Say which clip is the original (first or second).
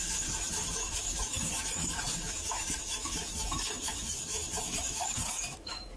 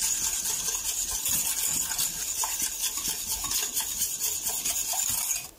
second